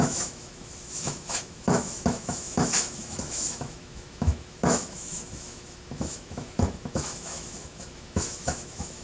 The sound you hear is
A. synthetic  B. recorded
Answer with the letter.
A